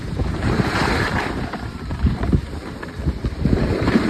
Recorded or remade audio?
remade